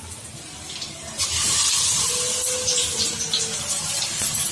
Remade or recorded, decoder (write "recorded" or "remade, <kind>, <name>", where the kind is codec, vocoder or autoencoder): recorded